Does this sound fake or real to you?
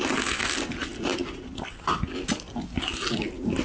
real